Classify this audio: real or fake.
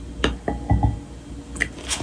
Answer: real